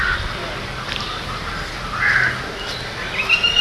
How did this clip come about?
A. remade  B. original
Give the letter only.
B